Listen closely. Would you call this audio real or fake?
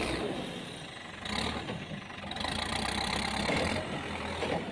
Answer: fake